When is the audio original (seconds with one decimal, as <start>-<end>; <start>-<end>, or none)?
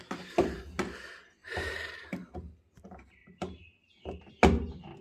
0.0-1.4; 2.5-3.2; 4.3-5.0